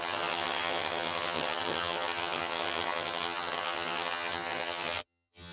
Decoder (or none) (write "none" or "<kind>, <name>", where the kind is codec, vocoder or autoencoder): vocoder, HiFi-GAN